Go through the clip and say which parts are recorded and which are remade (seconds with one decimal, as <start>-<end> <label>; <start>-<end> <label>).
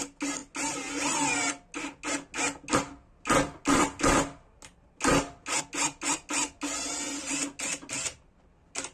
0.0-8.9 recorded